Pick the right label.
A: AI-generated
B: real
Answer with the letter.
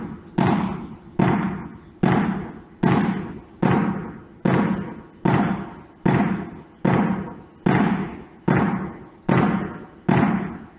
B